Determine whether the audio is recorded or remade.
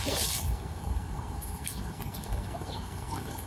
remade